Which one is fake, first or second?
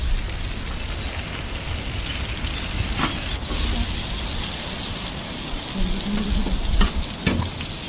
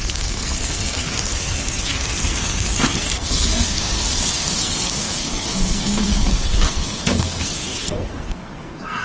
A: second